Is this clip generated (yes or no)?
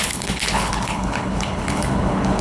yes